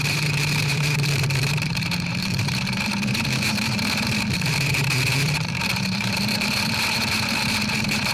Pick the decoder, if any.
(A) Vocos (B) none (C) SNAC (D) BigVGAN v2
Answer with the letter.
D